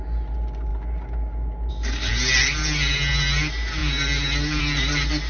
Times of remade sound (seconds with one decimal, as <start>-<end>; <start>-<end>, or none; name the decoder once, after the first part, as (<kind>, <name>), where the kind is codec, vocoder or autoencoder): none